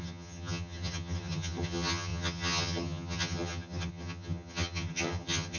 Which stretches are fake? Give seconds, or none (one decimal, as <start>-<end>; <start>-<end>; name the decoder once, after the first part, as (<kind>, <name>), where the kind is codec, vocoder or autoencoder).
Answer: 0.0-5.6 (vocoder, HiFi-GAN)